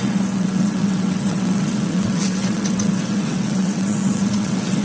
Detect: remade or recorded remade